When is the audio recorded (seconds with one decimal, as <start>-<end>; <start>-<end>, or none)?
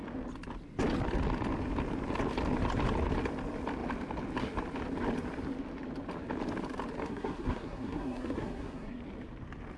0.0-7.0; 9.0-9.8